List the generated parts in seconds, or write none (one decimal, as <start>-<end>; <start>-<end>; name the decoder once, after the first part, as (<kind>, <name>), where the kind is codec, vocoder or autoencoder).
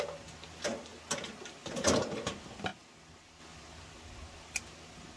none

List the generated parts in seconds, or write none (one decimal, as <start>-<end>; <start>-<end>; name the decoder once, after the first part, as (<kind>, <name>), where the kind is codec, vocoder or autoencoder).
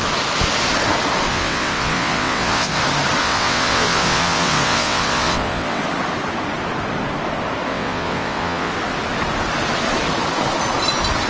1.3-2.8 (vocoder, WaveNeXt); 3.2-5.8; 7.7-8.7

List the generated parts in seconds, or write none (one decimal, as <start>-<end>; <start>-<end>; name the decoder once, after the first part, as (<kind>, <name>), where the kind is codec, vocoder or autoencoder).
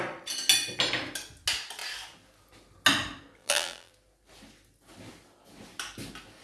3.4-3.9 (vocoder, BigVGAN v2)